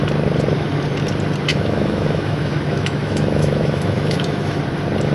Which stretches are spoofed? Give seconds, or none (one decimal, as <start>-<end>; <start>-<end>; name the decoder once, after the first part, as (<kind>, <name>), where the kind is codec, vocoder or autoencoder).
1.5-4.6 (autoencoder, DAC-VAE)